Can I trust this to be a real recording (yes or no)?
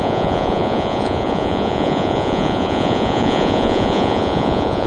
no